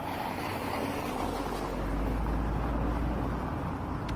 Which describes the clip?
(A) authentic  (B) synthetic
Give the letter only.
A